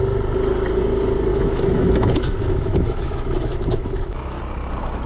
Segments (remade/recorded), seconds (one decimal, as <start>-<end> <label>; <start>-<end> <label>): 0.0-1.3 recorded; 1.3-4.4 remade; 4.4-5.1 recorded